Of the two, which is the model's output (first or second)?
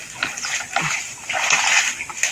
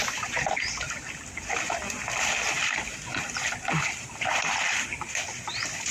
second